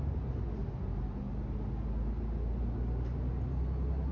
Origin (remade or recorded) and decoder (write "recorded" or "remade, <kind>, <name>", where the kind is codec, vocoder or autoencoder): recorded